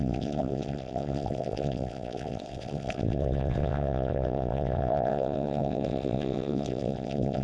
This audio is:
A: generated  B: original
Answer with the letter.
A